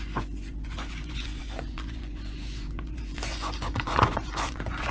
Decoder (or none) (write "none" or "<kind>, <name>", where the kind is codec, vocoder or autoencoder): vocoder, Vocos